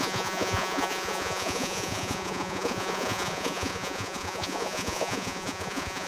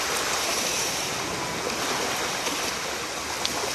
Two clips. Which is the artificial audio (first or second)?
first